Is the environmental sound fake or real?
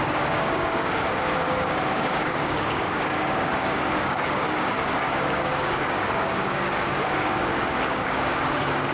fake